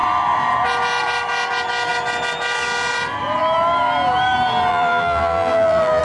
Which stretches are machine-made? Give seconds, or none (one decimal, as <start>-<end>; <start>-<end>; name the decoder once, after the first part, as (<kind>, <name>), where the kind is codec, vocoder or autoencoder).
4.7-6.0 (vocoder, BigVGAN v2)